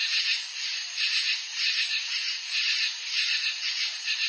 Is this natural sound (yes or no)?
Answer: no